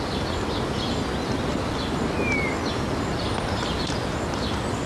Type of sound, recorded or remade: recorded